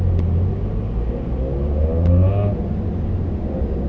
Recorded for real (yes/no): yes